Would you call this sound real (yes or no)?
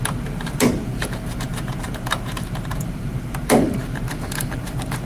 no